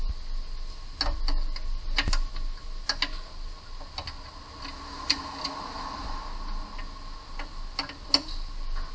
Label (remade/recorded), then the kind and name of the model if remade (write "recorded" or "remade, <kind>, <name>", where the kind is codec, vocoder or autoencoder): recorded